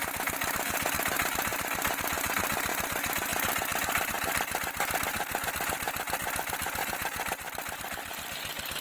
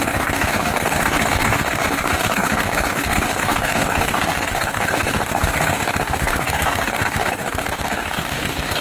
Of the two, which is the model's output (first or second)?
second